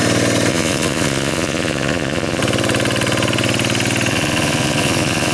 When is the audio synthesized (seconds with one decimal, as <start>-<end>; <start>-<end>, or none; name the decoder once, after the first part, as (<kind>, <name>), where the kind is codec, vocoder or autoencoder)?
0.5-2.4 (vocoder, Vocos); 4.1-5.3